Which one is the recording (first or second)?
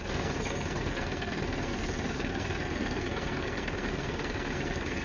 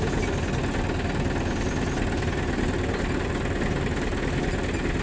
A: second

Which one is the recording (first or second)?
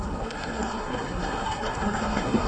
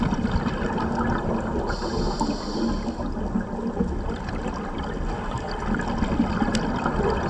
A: second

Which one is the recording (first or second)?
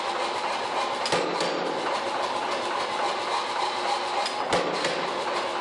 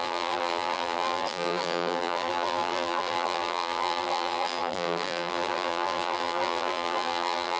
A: first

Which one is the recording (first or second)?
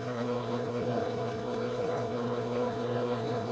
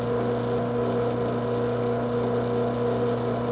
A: second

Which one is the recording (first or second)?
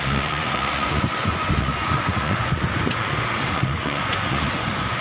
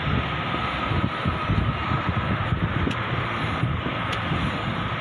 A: second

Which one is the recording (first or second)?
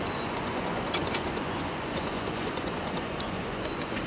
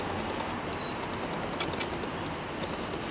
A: second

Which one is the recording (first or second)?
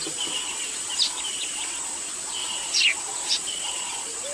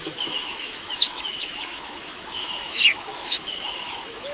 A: first